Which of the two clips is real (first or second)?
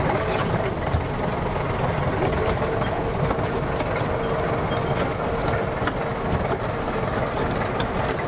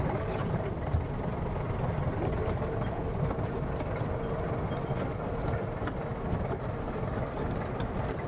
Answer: first